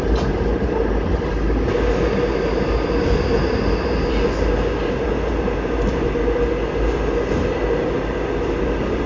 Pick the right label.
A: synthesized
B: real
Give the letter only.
B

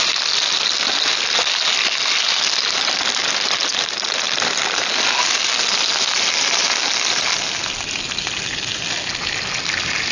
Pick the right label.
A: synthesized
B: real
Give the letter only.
B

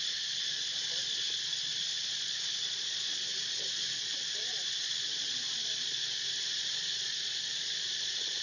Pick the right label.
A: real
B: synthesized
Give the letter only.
B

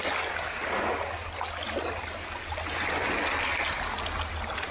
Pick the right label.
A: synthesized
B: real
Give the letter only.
B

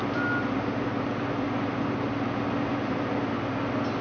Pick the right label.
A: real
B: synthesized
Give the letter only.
A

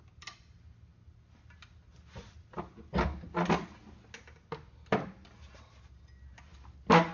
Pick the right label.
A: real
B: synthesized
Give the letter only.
A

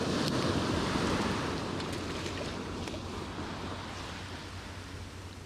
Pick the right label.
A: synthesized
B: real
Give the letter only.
B